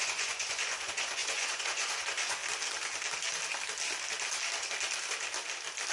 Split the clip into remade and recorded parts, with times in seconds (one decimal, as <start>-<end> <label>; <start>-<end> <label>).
0.0-2.4 remade; 2.4-5.9 recorded